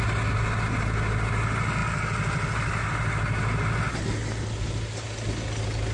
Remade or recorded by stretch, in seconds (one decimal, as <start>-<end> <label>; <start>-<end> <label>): 0.0-5.9 recorded